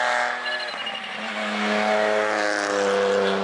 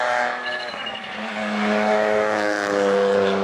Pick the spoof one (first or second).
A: second